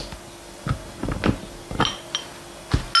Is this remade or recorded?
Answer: recorded